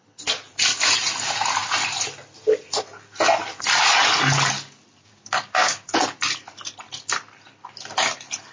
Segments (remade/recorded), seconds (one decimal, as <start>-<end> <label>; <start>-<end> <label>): 0.0-5.0 recorded; 5.0-5.9 remade; 5.9-8.5 recorded

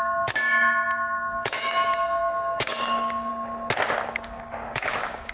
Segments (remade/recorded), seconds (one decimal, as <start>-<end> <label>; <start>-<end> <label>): 0.0-3.3 remade; 3.3-4.1 recorded; 4.1-5.3 remade

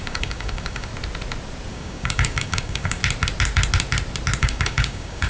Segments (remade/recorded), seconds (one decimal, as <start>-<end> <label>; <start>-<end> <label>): 0.0-0.9 remade; 0.9-1.7 recorded; 1.7-3.0 remade; 3.0-4.4 recorded; 4.4-5.3 remade

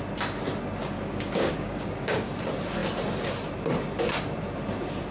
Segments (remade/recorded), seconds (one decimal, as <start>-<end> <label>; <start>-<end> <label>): 0.0-0.8 recorded; 0.8-2.3 remade; 2.3-5.1 recorded

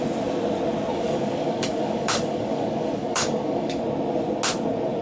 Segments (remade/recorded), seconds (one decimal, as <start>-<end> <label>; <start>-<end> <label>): 0.0-0.9 recorded; 0.9-3.8 remade; 3.8-5.0 recorded